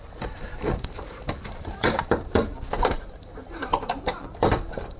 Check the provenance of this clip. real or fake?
fake